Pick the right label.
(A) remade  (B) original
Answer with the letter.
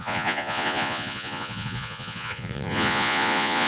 A